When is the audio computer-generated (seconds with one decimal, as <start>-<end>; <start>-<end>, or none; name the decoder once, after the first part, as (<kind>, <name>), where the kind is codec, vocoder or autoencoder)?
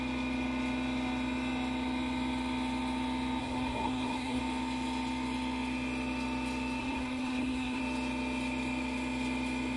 3.4-4.4 (codec, SNAC); 6.8-7.8